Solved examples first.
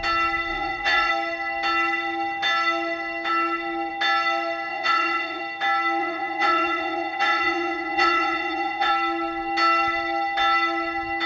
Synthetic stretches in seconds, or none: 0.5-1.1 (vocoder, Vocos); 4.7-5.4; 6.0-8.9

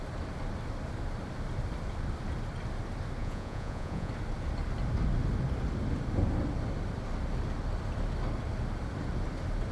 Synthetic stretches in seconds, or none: 3.2-4.1 (vocoder, Vocos)

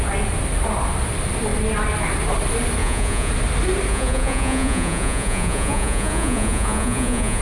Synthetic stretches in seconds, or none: 2.8-3.3 (vocoder, Vocos); 3.9-7.4

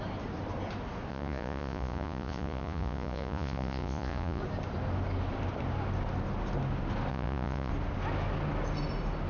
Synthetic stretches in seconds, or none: 1.1-4.4 (vocoder, Vocos); 7.1-7.7

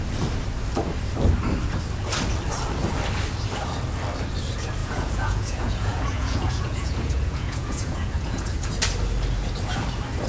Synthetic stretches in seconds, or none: 4.8-8.7 (vocoder, Vocos)

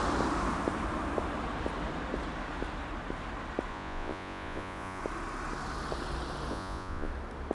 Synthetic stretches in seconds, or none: 3.7-5.0 (vocoder, Vocos); 6.5-7.1

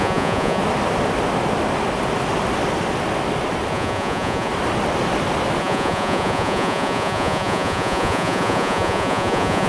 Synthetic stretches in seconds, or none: 0.0-0.6 (vocoder, Vocos); 3.7-4.5; 5.6-9.7

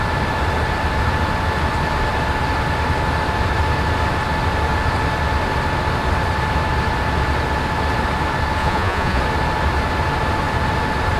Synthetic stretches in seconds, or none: 8.6-9.2 (vocoder, Vocos)